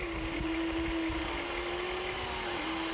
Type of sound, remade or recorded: recorded